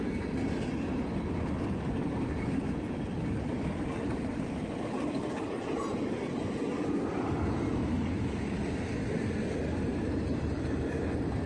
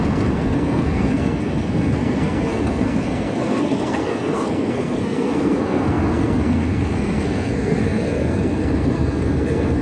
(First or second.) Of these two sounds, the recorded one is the first